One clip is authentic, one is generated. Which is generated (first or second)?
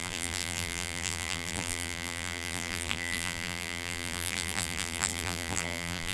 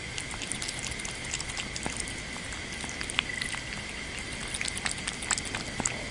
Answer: first